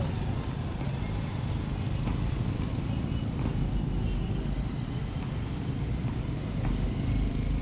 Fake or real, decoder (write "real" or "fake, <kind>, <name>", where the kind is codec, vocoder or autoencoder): real